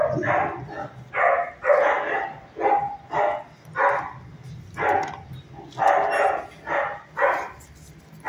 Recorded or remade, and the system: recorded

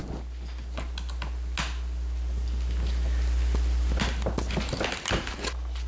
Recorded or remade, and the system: recorded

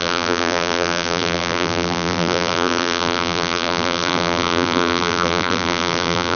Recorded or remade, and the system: remade, vocoder, BigVGAN v2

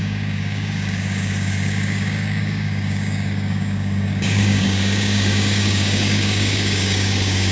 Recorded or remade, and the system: remade, codec, DAC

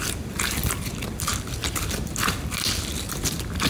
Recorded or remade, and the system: remade, vocoder, BigVGAN v2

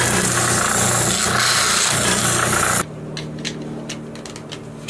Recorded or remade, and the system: recorded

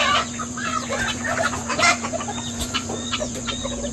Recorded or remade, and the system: remade, vocoder, Vocos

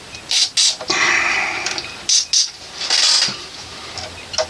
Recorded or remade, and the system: recorded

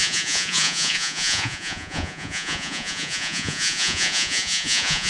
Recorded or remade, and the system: remade, vocoder, Vocos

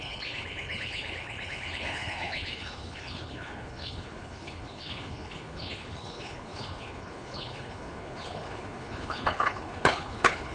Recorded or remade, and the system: remade, codec, HILCodec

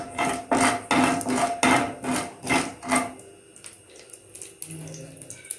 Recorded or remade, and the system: recorded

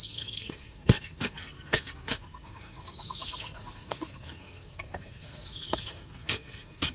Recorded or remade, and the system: remade, codec, SNAC